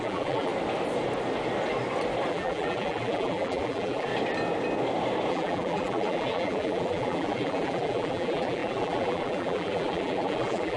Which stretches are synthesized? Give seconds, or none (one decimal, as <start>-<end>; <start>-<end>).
0.0-0.5; 2.3-4.1; 5.3-10.8